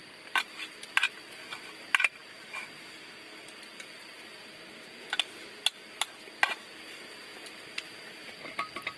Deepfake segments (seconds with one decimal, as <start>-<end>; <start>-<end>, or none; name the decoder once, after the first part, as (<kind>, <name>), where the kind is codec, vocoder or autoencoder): none